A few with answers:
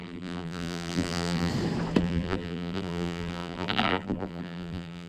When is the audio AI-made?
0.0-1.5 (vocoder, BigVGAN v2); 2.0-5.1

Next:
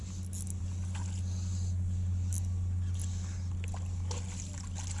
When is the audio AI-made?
none

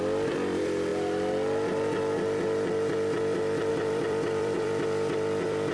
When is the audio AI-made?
0.0-0.9 (vocoder, BigVGAN v2); 3.7-5.7

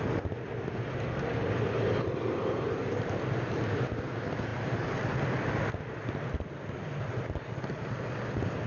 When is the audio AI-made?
none

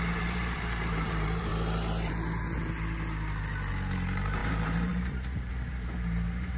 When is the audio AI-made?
0.0-1.5 (vocoder, BigVGAN v2); 3.7-6.6

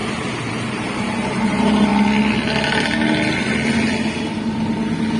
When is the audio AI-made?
0.0-1.9 (vocoder, BigVGAN v2)